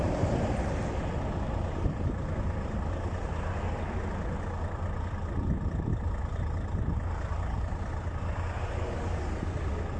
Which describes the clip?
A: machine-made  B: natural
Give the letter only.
B